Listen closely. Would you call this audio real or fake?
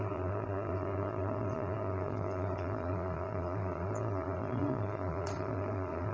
fake